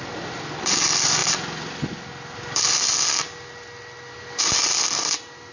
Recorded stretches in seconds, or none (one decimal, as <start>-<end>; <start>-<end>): 0.0-5.5